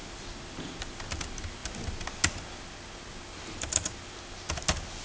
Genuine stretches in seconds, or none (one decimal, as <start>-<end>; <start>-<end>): 0.0-5.0